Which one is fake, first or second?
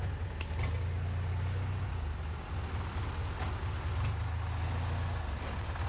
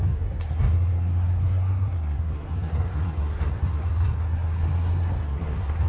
second